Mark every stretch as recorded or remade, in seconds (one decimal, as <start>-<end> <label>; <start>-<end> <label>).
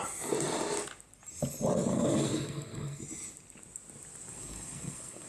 0.0-1.9 recorded; 1.9-3.0 remade; 3.0-4.3 recorded; 4.3-5.3 remade